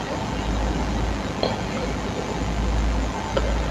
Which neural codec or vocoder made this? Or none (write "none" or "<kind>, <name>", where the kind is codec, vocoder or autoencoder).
none